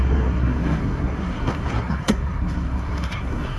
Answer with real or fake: fake